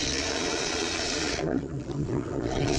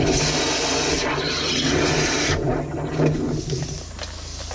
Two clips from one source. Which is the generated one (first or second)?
first